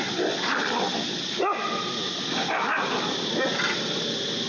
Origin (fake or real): real